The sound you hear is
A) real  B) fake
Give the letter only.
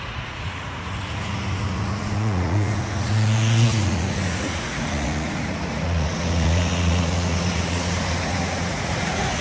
B